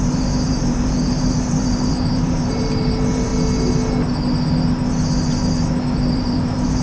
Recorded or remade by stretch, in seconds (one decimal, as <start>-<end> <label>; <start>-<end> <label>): 0.0-3.3 remade; 3.3-6.1 recorded; 6.1-6.8 remade